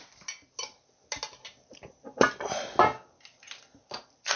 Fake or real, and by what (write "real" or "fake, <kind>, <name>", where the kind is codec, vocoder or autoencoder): real